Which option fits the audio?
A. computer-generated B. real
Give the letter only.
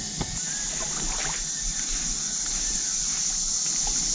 B